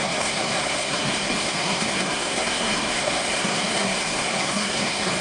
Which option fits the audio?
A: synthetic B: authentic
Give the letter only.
A